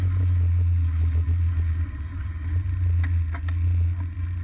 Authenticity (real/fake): real